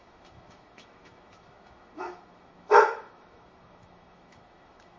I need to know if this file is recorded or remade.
remade